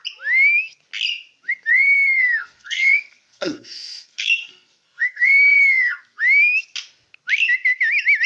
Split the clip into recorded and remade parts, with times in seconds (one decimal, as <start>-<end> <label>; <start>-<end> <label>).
0.0-1.7 recorded; 1.7-6.2 remade; 6.2-8.3 recorded